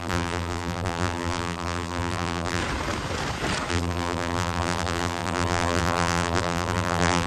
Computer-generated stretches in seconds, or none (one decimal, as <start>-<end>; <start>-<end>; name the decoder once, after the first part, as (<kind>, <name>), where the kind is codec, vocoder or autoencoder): 0.0-2.6 (vocoder, BigVGAN v2); 3.7-7.3